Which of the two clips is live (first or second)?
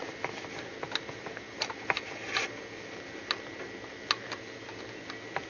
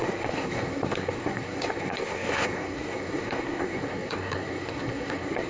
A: first